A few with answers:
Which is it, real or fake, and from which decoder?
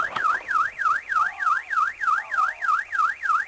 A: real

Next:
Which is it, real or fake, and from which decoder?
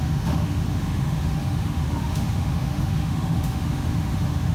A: fake, autoencoder, DAC-VAE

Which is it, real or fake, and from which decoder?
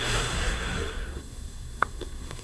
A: fake, codec, SNAC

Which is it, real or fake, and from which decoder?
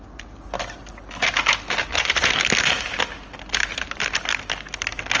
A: real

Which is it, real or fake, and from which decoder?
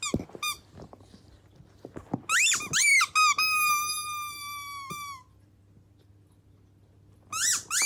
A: real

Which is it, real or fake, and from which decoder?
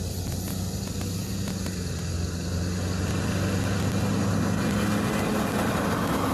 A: real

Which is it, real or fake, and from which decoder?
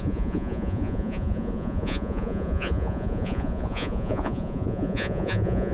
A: fake, vocoder, Vocos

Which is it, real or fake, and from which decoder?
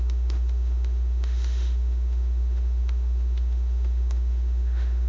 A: fake, autoencoder, DAC-VAE